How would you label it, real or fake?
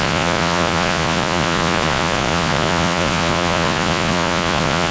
fake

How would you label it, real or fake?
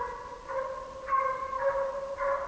real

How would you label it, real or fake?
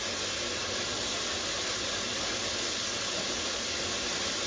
real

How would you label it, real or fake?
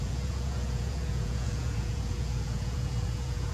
fake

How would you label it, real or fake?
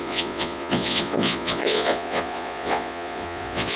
fake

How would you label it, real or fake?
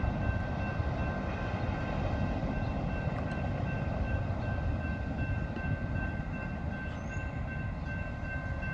real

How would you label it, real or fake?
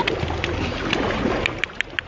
real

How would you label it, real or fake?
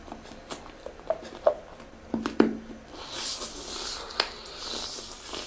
real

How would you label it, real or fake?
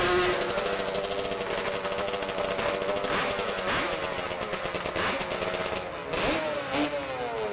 real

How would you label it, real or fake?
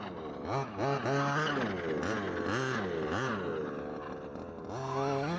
real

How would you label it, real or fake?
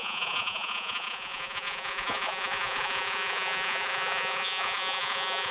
fake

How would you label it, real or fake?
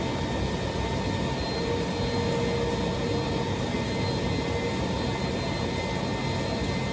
real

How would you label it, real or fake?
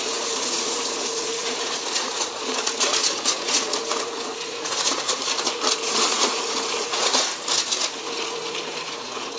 fake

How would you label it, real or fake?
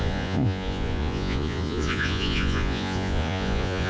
fake